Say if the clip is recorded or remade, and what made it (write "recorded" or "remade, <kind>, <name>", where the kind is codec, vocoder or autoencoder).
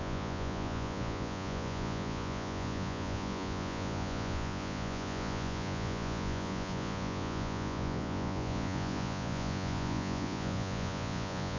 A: remade, vocoder, Vocos